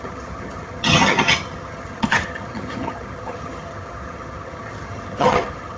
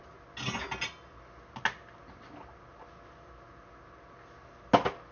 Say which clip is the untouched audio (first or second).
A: second